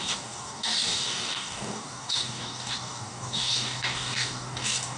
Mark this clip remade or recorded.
remade